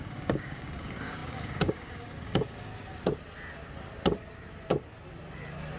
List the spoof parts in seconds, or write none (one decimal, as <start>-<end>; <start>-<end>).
0.0-2.7